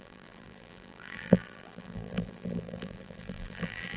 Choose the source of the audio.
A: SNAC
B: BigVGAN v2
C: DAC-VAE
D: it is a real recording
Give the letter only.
B